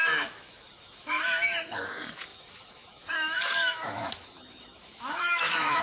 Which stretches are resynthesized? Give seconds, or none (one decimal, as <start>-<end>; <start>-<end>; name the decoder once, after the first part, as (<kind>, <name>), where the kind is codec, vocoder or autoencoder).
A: 0.0-5.8 (autoencoder, DAC-VAE)